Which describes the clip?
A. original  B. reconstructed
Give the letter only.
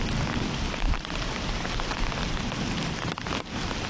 A